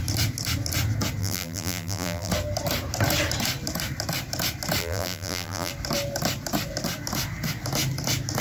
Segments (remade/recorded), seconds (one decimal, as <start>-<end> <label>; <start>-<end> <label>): 0.0-1.2 recorded; 1.2-2.3 remade; 2.3-4.8 recorded; 4.8-5.7 remade; 5.7-8.4 recorded